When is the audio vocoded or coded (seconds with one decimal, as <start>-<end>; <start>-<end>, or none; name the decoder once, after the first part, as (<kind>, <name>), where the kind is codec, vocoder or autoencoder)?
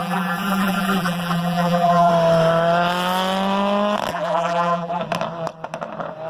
0.0-2.1 (vocoder, BigVGAN v2); 4.1-5.0